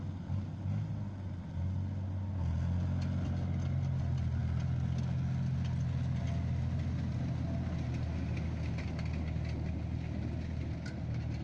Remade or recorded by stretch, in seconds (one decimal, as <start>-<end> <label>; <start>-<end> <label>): 0.0-11.4 recorded